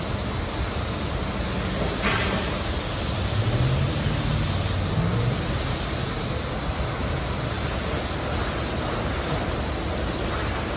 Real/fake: real